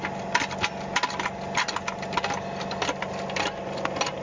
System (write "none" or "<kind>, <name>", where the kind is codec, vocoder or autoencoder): none